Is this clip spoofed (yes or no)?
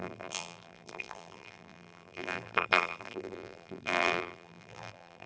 yes